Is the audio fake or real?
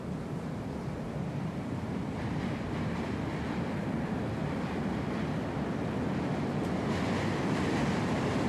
fake